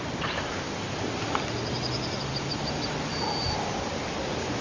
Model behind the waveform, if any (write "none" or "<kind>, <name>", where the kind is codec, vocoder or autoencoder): none